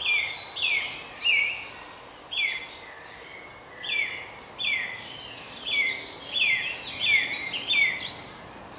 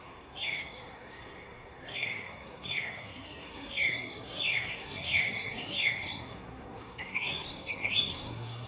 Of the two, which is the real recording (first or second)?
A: first